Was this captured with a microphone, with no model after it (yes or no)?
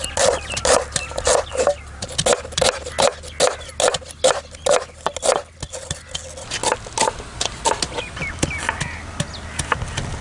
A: yes